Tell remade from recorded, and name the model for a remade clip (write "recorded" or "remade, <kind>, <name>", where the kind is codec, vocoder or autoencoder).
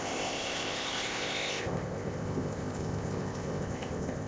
remade, codec, ZipCodec